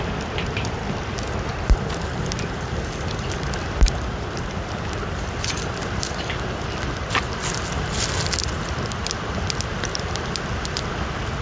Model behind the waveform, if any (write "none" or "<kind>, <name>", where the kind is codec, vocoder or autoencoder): none